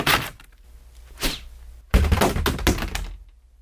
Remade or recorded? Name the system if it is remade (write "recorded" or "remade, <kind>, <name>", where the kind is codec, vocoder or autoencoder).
recorded